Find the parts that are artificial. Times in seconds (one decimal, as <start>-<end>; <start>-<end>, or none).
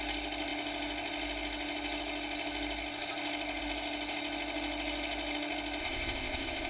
5.8-6.7